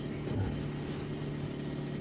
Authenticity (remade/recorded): recorded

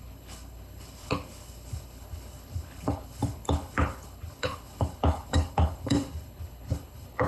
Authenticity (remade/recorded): remade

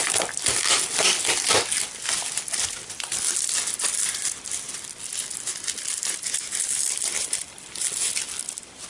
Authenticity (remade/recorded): recorded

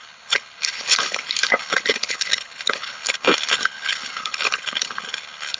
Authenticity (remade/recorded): remade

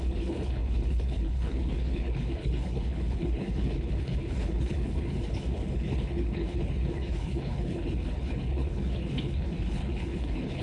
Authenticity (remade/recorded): remade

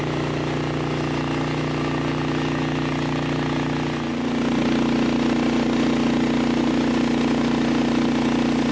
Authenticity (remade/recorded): recorded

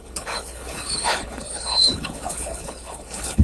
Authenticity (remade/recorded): remade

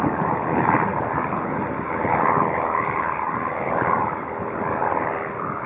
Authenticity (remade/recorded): recorded